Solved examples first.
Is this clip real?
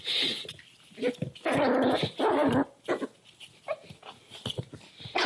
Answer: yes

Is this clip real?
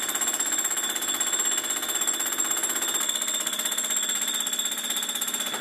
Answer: yes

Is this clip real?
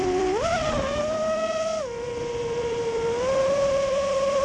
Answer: no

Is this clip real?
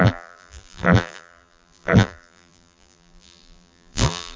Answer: no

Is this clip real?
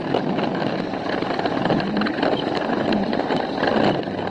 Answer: yes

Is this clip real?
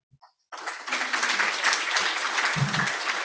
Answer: yes